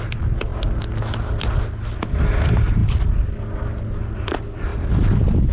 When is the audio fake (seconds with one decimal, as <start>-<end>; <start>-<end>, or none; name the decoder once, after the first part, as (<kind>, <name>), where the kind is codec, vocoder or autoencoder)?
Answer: none